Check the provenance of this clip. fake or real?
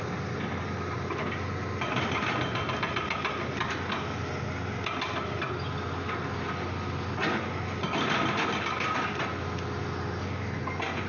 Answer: real